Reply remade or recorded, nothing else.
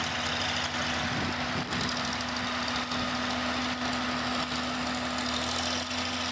recorded